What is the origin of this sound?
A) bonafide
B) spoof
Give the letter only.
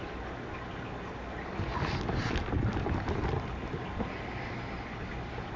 A